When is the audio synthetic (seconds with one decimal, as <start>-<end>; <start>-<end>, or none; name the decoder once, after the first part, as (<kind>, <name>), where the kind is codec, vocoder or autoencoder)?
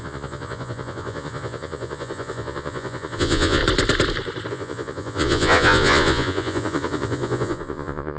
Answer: 0.0-3.6 (vocoder, Vocos); 4.5-8.2